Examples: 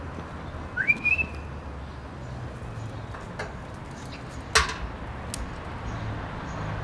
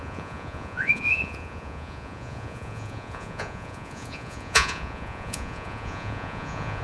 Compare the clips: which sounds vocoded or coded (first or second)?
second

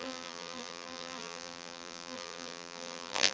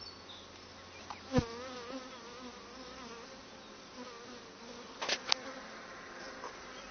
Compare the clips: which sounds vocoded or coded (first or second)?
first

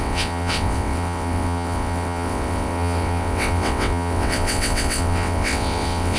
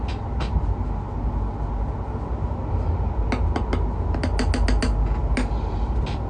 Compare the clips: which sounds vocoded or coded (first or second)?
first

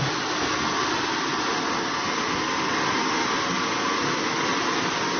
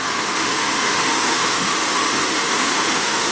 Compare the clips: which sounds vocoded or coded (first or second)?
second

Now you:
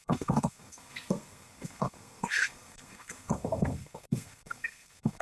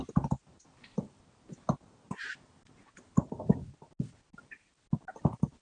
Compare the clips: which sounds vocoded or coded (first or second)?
first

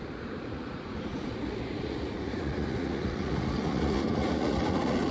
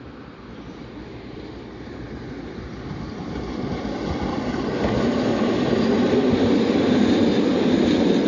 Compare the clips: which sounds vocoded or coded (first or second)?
first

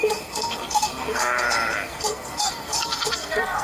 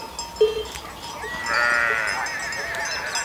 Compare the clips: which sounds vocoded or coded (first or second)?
first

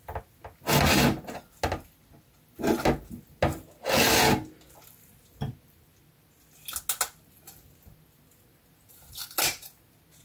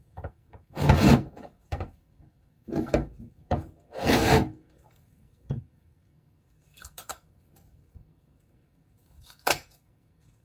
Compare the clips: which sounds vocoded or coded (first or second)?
second